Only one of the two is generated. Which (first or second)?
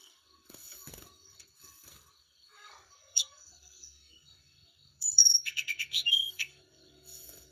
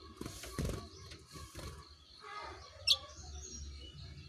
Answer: first